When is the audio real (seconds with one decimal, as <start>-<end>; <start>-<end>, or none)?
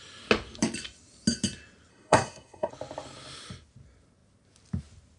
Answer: 0.0-1.9; 2.7-5.2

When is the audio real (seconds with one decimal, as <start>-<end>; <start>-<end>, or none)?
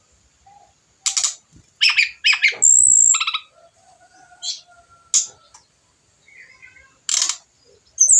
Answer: 0.0-8.2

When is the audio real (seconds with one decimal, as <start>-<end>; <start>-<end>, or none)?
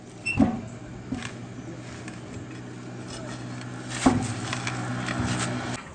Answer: 0.0-5.9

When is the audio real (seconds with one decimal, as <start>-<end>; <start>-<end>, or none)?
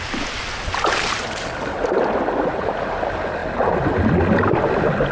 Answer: 0.0-5.1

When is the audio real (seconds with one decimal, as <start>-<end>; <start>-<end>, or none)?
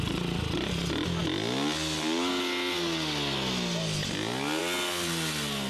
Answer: 0.0-5.7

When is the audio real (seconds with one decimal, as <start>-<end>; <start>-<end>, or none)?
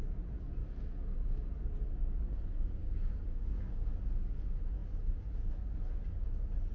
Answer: 0.0-2.8; 4.0-6.7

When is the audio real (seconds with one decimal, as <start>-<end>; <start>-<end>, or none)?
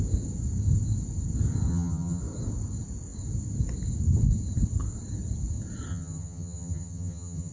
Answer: 0.0-1.7; 2.2-5.9